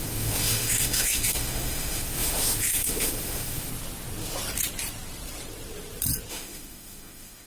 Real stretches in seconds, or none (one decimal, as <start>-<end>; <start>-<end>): 3.7-6.3